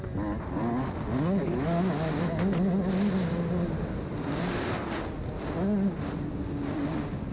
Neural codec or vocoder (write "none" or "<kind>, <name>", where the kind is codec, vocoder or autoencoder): none